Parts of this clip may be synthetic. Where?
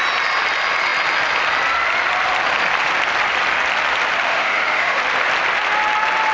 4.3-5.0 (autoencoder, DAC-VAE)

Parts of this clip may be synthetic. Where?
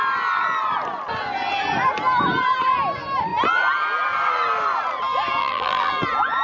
5.4-5.9 (vocoder, BigVGAN v2)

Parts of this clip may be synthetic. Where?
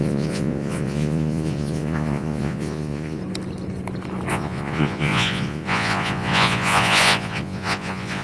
0.0-3.2 (vocoder, Vocos); 4.3-8.2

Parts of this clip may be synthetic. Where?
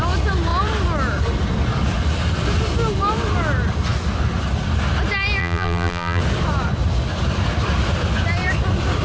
5.4-6.2 (vocoder, BigVGAN v2)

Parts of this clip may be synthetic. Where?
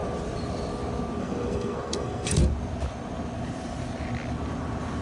1.2-2.4 (codec, SNAC)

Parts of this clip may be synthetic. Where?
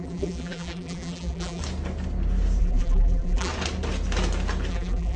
0.0-1.6 (vocoder, BigVGAN v2); 2.6-3.5; 4.7-5.2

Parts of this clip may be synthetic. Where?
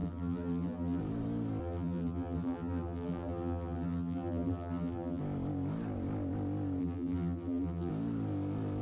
0.0-1.0 (vocoder, BigVGAN v2); 1.6-5.2; 6.8-7.9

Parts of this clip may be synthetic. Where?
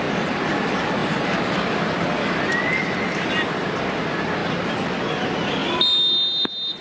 none